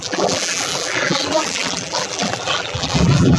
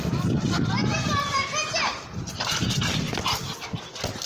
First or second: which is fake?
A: first